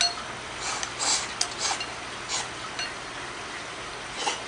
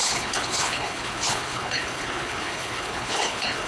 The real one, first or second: first